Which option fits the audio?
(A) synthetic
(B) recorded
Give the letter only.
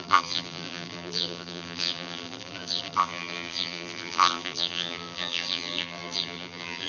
A